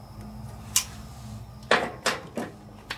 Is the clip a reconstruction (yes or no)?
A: no